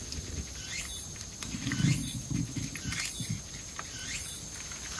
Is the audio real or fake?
real